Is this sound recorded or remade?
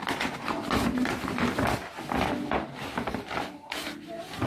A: recorded